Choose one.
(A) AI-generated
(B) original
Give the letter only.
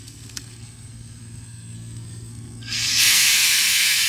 A